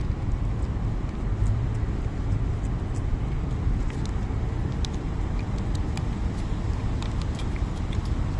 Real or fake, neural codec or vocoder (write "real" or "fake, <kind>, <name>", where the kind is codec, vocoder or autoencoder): real